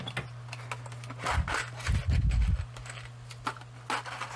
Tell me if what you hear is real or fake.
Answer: real